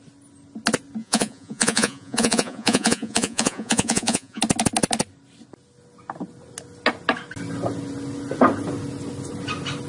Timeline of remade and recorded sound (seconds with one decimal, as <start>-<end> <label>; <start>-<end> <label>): 0.0-1.0 recorded; 1.0-4.4 remade; 4.4-9.9 recorded